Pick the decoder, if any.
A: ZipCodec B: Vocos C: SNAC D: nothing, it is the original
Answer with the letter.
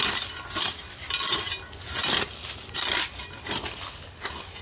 D